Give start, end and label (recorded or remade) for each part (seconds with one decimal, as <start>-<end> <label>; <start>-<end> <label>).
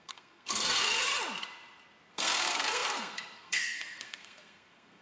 0.0-1.1 remade; 1.1-2.1 recorded; 2.1-5.0 remade